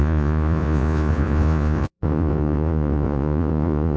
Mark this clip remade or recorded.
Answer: remade